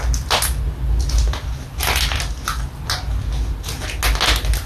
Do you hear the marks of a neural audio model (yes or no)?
no